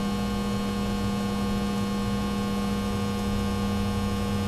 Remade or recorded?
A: recorded